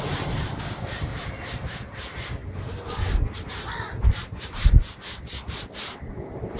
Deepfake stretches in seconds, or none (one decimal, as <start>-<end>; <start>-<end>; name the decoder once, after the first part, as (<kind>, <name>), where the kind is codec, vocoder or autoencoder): 0.0-1.1 (vocoder, BigVGAN v2); 2.0-2.4; 3.5-6.6